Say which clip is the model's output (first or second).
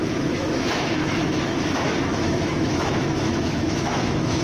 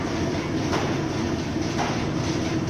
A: first